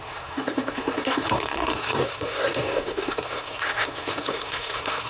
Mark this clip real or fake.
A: fake